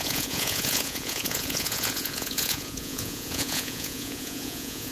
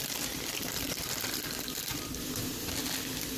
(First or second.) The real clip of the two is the second